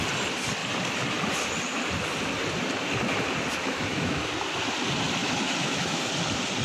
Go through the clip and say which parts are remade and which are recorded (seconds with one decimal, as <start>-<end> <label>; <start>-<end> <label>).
0.0-3.6 recorded; 3.6-4.3 remade; 4.3-5.2 recorded; 5.2-6.1 remade; 6.1-6.6 recorded